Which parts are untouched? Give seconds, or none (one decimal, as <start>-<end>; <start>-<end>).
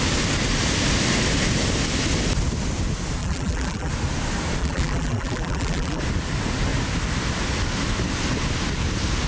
0.0-3.2; 3.9-4.6; 6.0-9.3